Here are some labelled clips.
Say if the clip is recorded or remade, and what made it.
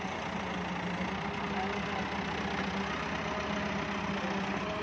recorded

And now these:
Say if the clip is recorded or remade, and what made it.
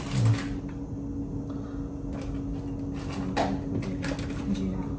recorded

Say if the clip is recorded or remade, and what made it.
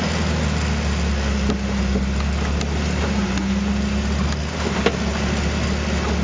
recorded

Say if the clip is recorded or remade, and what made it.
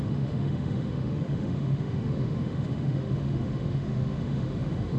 remade, autoencoder, DAC-VAE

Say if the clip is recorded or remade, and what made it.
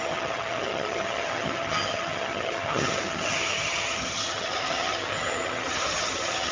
remade, vocoder, HiFi-GAN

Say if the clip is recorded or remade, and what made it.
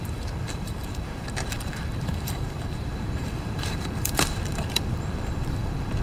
remade, vocoder, BigVGAN v2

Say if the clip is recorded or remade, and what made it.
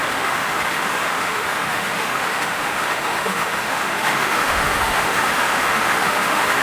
remade, autoencoder, DAC-VAE